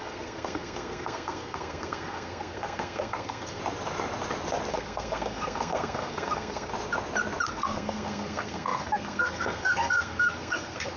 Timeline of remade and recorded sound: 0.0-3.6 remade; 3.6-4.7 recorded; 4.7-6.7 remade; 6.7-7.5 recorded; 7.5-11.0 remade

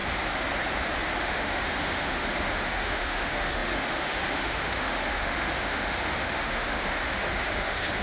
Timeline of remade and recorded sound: 0.0-1.2 recorded; 1.2-8.0 remade

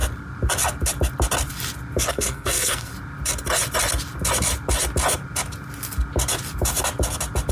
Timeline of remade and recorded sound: 0.0-2.1 recorded; 2.1-2.9 remade; 2.9-7.5 recorded

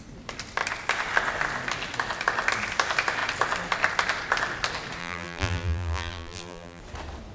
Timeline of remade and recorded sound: 0.0-5.0 recorded; 5.0-6.8 remade; 6.8-7.3 recorded

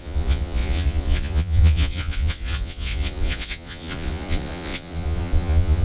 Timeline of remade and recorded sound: 0.0-5.8 remade